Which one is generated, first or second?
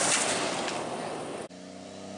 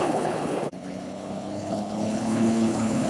second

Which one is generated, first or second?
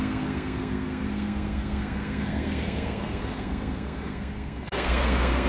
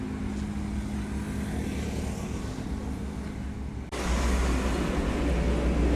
first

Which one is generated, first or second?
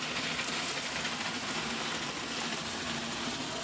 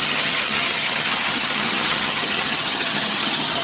second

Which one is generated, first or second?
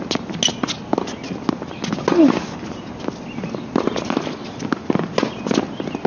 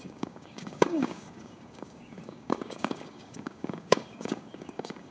second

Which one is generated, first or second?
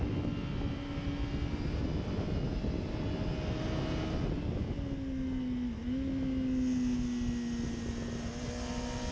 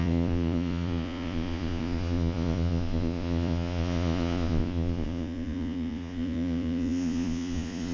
second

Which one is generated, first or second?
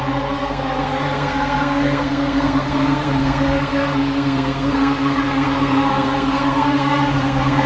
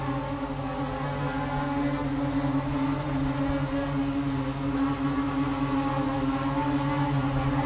first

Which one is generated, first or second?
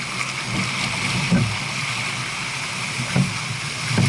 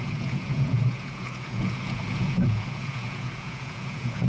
second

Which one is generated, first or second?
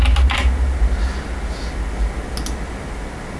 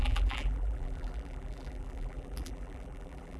second